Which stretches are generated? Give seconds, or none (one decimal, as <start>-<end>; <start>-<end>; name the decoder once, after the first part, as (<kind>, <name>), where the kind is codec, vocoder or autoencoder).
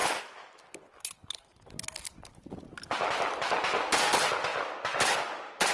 none